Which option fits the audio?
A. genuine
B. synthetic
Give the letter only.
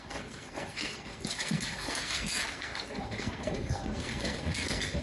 B